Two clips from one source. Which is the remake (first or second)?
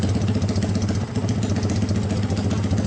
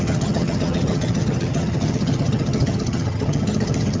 second